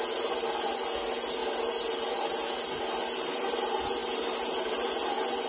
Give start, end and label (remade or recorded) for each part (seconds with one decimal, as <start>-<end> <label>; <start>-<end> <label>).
0.0-5.5 recorded